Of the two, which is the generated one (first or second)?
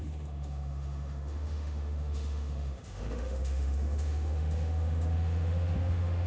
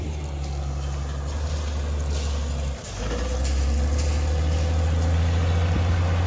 first